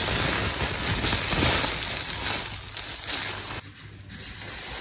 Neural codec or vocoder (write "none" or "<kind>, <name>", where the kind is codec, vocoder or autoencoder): none